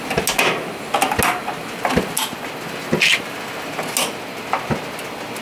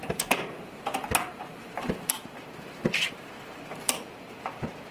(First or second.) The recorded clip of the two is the first